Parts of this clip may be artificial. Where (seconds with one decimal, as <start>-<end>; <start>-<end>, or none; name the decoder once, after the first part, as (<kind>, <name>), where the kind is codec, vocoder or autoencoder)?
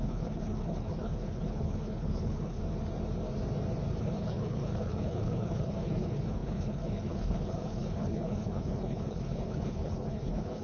0.0-2.6 (codec, HILCodec); 4.0-10.6